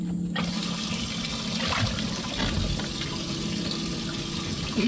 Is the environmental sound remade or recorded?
recorded